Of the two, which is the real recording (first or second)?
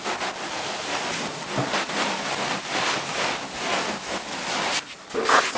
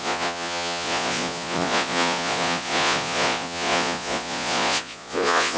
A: first